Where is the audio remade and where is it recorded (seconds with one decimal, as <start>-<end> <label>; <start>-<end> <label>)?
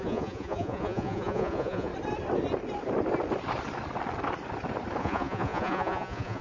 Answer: 0.0-1.9 remade; 1.9-5.0 recorded; 5.0-6.4 remade